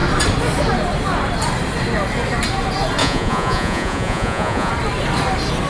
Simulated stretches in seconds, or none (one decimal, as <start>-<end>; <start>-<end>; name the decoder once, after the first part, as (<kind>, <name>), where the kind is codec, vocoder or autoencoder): 3.0-4.7 (vocoder, Vocos)